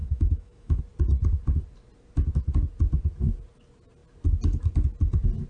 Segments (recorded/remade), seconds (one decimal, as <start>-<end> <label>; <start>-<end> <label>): 0.0-0.8 remade; 0.8-5.5 recorded